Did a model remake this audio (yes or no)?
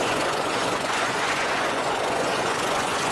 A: yes